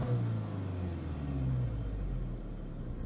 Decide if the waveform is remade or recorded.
recorded